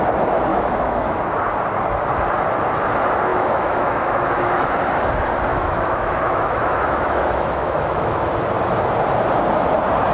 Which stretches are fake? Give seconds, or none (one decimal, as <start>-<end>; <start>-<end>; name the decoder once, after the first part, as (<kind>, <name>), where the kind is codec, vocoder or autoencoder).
0.5-1.2 (autoencoder, DAC-VAE); 3.3-4.7; 5.5-8.3